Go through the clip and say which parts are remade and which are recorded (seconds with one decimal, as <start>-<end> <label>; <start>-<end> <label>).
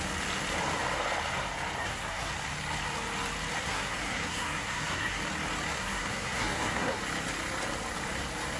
0.0-1.8 recorded; 1.8-2.3 remade; 2.3-3.6 recorded; 3.6-5.2 remade; 5.2-5.7 recorded; 5.7-7.0 remade; 7.0-8.6 recorded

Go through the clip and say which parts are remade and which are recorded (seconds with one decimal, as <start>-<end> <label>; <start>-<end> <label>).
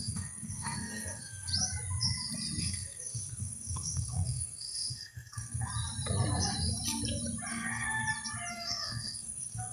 0.0-1.5 remade; 1.5-2.6 recorded; 2.6-5.7 remade; 5.7-7.5 recorded; 7.5-8.0 remade; 8.0-8.5 recorded; 8.5-9.7 remade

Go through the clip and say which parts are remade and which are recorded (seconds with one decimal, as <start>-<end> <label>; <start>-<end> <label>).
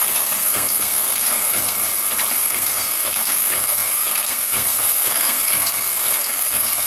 0.0-1.8 remade; 1.8-2.3 recorded; 2.3-6.9 remade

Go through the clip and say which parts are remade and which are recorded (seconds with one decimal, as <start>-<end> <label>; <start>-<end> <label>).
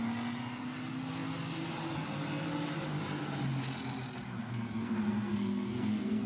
0.0-4.4 recorded; 4.4-6.3 remade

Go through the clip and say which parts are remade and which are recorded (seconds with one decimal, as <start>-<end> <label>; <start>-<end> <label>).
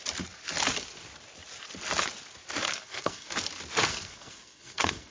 0.0-2.7 recorded; 2.7-3.3 remade; 3.3-3.9 recorded; 3.9-5.1 remade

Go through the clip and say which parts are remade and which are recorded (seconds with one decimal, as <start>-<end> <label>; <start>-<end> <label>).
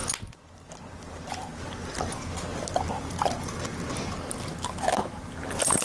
0.0-5.8 recorded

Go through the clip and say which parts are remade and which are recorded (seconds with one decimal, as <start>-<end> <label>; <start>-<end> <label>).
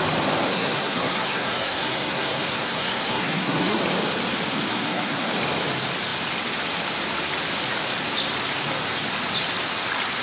0.0-0.5 recorded; 0.5-3.8 remade; 3.8-4.7 recorded; 4.7-5.3 remade; 5.3-10.2 recorded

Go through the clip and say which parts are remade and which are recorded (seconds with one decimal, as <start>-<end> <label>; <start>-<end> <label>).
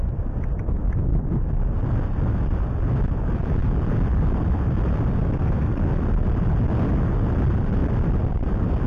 0.0-8.9 recorded